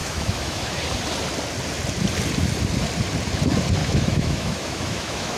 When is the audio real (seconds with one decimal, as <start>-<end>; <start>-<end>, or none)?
0.8-3.8